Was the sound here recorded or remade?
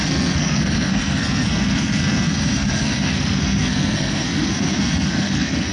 remade